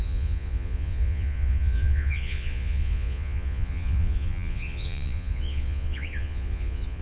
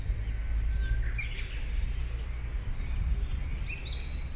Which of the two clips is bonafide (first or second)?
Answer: second